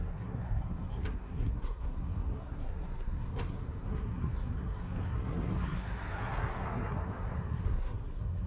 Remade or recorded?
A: remade